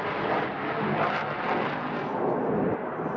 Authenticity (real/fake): real